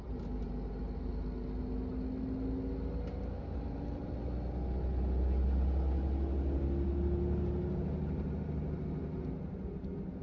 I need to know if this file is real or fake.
real